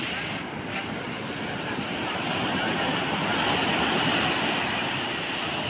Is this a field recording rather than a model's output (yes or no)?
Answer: yes